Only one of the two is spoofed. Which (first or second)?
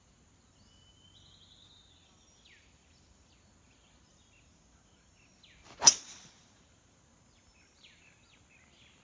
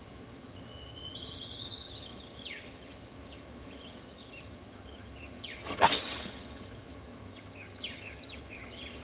second